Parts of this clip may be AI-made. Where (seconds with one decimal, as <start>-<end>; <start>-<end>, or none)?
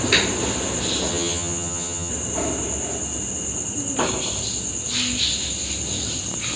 1.1-2.1